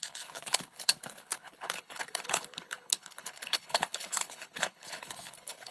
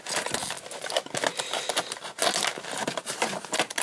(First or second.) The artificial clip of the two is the first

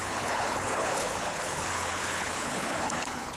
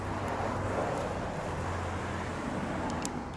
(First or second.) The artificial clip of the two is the first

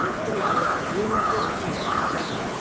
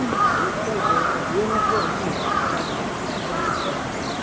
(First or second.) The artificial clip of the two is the first